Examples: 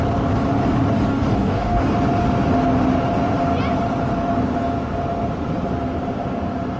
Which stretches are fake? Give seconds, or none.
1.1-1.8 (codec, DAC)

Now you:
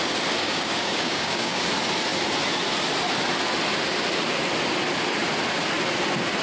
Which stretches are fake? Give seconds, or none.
0.4-1.7 (codec, DAC)

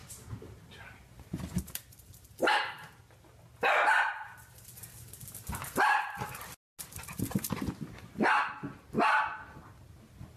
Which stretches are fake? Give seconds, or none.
none

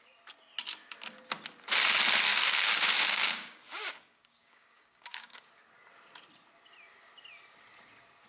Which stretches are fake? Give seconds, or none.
2.3-5.5 (codec, DAC)

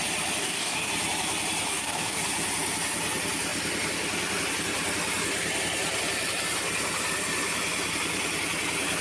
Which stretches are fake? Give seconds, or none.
0.4-0.9 (codec, DAC); 1.7-2.2

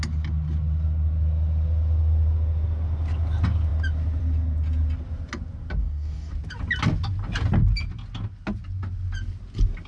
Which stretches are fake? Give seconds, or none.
5.8-6.3 (codec, DAC)